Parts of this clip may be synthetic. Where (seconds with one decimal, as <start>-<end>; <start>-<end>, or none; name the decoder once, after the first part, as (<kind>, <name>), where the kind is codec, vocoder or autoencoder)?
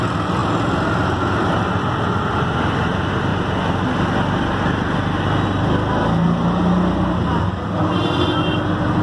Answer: none